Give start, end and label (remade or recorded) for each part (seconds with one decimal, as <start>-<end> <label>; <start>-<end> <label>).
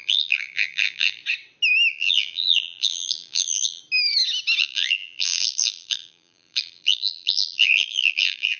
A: 0.0-1.2 remade; 1.2-1.9 recorded; 1.9-3.8 remade; 3.8-4.6 recorded; 4.6-8.6 remade